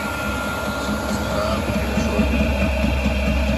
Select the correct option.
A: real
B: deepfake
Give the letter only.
A